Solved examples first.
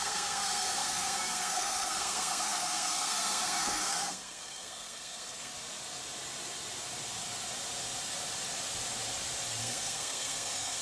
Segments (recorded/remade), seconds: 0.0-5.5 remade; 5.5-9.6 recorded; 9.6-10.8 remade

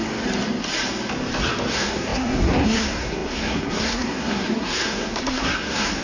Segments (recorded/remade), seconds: 0.0-1.7 recorded; 1.7-6.0 remade